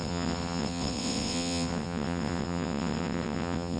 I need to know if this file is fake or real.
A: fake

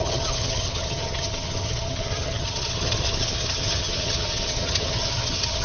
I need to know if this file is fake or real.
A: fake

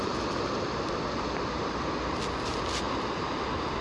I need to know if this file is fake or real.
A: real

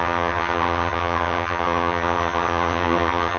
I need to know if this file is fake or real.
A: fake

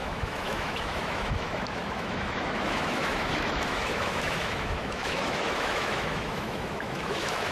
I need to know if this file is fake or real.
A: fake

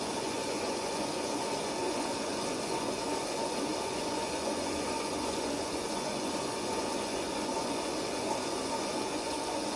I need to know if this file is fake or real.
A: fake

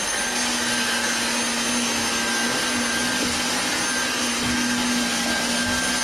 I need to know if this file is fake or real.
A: real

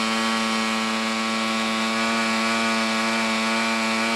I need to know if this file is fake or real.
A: real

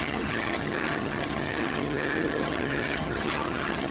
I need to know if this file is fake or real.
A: fake